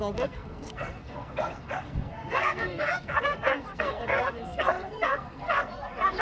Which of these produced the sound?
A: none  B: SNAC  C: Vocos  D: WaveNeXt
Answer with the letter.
B